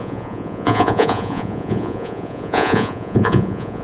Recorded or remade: remade